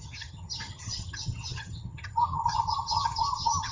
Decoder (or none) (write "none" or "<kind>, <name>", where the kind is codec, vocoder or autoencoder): vocoder, HiFi-GAN